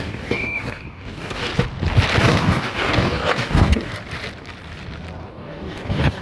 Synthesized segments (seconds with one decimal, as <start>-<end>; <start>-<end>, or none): 0.0-1.5; 2.2-3.9; 5.2-6.2